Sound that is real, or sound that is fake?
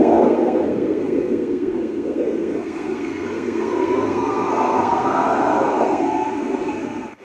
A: fake